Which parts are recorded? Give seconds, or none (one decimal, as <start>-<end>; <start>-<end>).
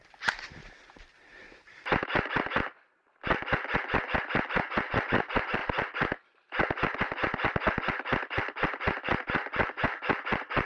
0.0-10.7